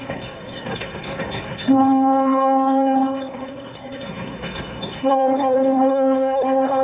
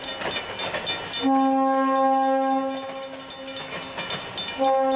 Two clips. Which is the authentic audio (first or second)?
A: second